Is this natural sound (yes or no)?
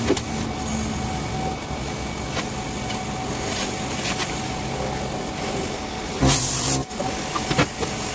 yes